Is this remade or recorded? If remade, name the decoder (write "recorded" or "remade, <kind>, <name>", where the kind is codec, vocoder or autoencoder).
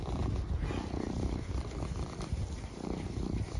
recorded